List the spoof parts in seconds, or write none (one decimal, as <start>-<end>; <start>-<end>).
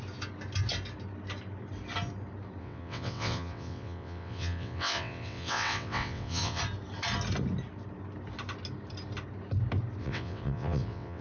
2.6-6.6; 10.0-11.2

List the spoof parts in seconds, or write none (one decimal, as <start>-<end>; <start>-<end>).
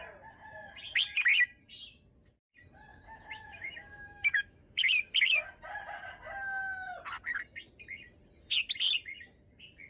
2.9-4.9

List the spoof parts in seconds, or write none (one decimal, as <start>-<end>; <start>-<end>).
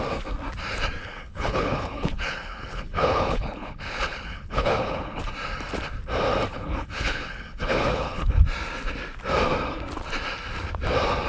1.0-5.2; 6.5-8.4